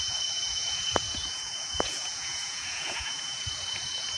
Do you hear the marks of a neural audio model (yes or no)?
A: yes